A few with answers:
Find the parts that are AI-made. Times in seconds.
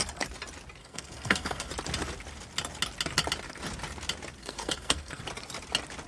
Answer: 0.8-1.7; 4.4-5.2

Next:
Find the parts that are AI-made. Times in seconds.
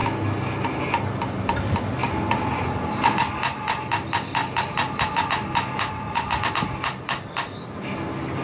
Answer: none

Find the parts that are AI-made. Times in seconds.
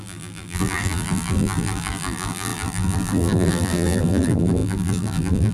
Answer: 0.0-5.5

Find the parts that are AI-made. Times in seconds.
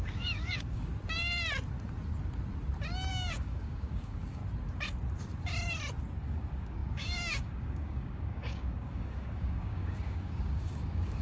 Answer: 0.0-0.9; 3.1-4.4; 6.2-11.2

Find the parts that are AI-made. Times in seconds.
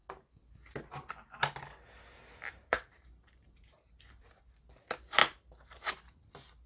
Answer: 2.6-4.4; 5.2-5.9